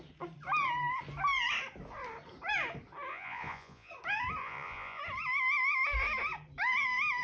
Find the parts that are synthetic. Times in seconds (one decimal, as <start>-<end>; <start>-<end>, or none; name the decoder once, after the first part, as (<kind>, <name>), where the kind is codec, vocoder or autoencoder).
3.1-3.9 (vocoder, Vocos); 4.4-5.0